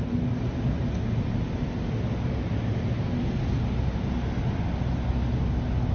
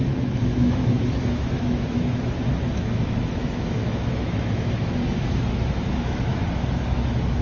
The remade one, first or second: second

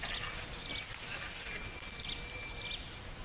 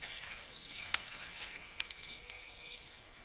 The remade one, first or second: second